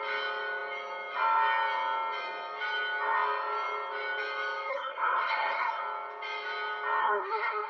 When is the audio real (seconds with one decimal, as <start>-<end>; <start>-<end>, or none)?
0.0-4.7; 5.8-7.0